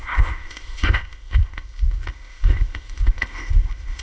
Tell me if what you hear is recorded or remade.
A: remade